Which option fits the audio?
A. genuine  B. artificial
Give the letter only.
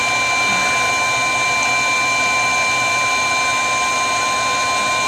A